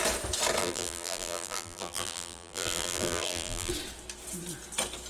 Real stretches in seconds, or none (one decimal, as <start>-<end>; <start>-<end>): 0.0-0.6; 3.7-5.1